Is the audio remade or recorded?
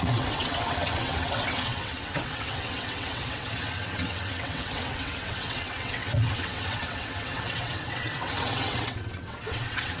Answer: remade